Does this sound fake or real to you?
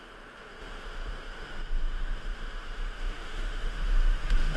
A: fake